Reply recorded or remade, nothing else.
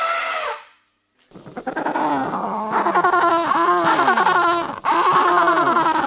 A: recorded